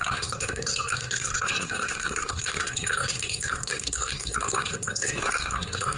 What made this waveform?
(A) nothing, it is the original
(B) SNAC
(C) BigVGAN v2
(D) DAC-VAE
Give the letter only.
B